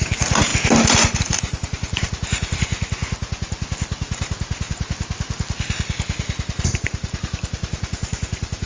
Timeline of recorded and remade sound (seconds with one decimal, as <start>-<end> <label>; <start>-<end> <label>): 0.0-0.5 remade; 0.5-1.2 recorded; 1.2-3.0 remade; 3.0-6.7 recorded; 6.7-8.7 remade